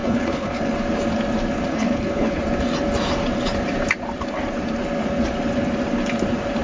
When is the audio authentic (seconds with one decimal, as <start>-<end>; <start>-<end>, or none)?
0.6-1.7; 2.4-6.6